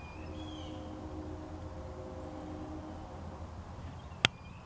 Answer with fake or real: real